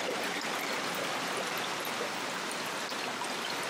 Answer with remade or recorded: recorded